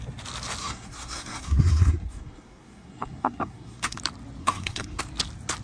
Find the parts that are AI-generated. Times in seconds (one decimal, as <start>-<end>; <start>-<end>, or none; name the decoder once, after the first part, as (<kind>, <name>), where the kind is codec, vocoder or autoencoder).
0.6-4.0 (codec, SNAC); 4.4-5.0